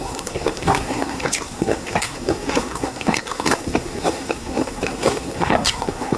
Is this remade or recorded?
remade